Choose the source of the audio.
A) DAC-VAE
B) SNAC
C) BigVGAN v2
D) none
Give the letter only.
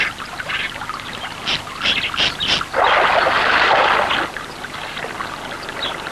D